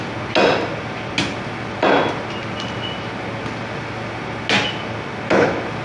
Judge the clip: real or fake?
real